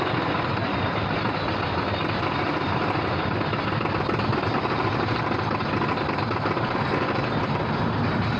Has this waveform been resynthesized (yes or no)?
yes